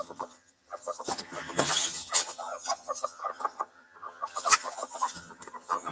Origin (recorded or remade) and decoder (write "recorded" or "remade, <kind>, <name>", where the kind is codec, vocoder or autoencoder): remade, vocoder, HiFi-GAN